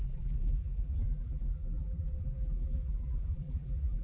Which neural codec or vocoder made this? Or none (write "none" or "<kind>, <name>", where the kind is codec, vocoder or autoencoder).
vocoder, BigVGAN v2